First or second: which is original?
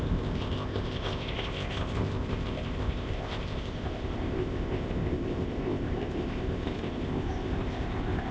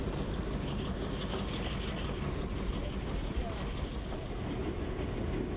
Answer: second